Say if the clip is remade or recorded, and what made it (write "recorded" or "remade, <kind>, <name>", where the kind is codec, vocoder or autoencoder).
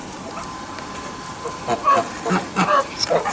recorded